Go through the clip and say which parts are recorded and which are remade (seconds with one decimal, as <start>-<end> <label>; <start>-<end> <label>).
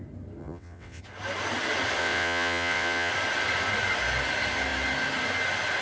0.0-0.4 recorded; 0.4-1.0 remade; 1.0-2.0 recorded; 2.0-3.1 remade; 3.1-5.8 recorded